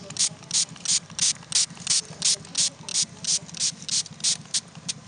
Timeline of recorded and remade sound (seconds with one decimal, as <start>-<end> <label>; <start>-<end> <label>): 0.0-5.1 recorded